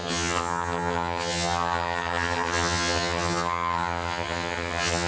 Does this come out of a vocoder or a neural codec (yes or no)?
yes